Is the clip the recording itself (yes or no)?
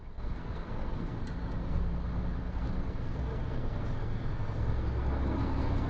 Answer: no